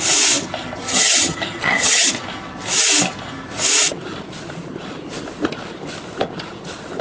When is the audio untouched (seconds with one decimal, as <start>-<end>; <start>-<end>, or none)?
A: 0.0-0.9; 2.1-7.0